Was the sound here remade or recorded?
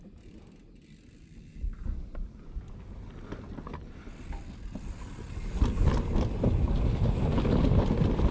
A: recorded